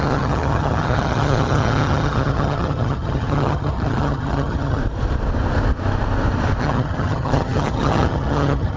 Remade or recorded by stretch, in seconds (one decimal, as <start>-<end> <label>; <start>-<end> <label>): 0.0-4.8 remade; 4.8-6.6 recorded; 6.6-8.8 remade